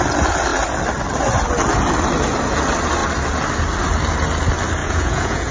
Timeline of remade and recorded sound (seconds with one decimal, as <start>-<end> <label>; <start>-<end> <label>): 0.0-4.8 recorded; 4.8-5.5 remade